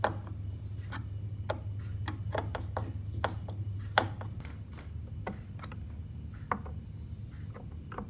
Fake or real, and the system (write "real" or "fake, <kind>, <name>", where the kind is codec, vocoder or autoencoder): real